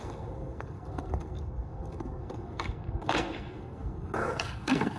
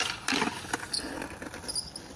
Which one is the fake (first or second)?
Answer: first